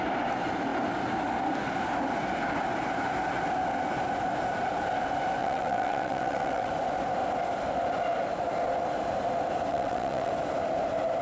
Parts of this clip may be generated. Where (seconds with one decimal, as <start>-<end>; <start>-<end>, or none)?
5.4-6.7; 9.7-10.3